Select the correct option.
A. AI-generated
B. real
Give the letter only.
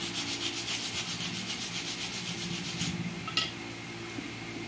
B